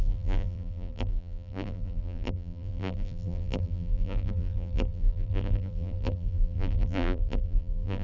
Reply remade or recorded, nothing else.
remade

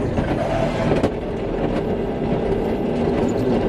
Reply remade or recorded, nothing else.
recorded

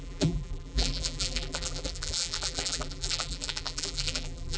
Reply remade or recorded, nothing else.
remade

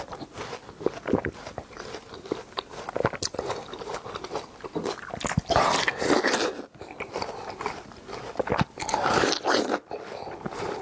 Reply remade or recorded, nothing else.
recorded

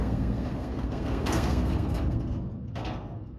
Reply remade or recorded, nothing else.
remade